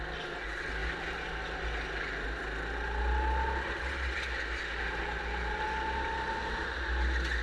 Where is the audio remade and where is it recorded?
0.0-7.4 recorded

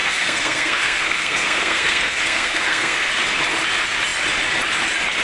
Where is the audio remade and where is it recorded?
0.0-3.1 remade; 3.1-5.2 recorded

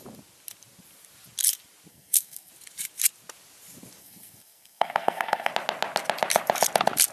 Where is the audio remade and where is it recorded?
0.0-1.9 recorded; 1.9-2.5 remade; 2.5-4.0 recorded; 4.0-5.5 remade; 5.5-7.1 recorded

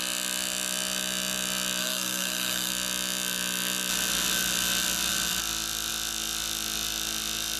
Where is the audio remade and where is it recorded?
0.0-1.8 recorded; 1.8-2.7 remade; 2.7-7.6 recorded

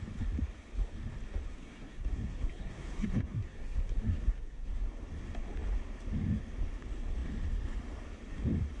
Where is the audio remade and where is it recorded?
0.0-1.6 recorded; 1.6-4.7 remade; 4.7-8.8 recorded